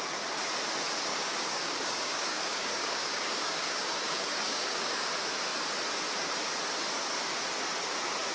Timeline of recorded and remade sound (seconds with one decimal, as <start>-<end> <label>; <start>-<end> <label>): 0.0-1.1 recorded; 1.1-5.1 remade; 5.1-8.3 recorded